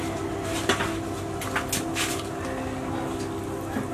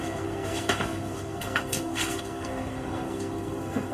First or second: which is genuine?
first